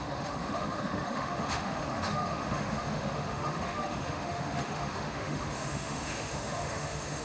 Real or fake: fake